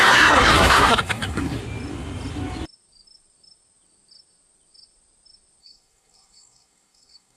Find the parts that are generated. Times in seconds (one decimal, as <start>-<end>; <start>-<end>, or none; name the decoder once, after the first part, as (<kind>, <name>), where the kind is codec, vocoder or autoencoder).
0.0-1.6 (codec, SNAC); 5.6-7.4